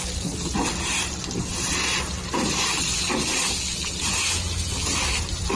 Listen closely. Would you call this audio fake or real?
real